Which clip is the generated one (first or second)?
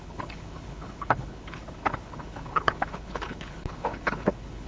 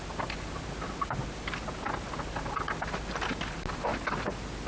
first